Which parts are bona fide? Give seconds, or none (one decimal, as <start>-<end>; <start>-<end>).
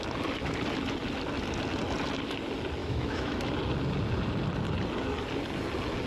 0.0-2.8; 3.5-6.1